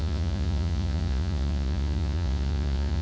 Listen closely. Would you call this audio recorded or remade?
remade